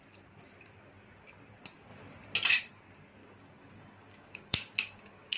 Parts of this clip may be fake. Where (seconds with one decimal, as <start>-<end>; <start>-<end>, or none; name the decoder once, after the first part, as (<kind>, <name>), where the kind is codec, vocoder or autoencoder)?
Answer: 3.2-5.4 (codec, DAC)